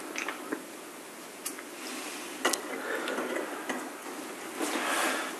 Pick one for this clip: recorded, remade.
recorded